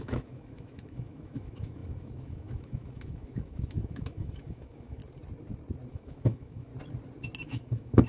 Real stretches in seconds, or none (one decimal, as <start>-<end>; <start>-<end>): 5.0-5.9; 6.7-7.4